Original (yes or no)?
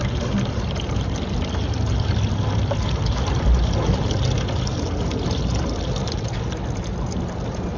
yes